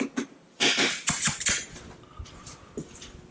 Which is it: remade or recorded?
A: recorded